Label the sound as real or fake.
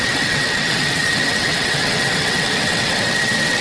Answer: fake